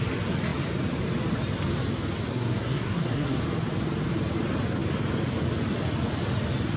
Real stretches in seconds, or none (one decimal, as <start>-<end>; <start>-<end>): 0.0-2.3; 3.4-6.8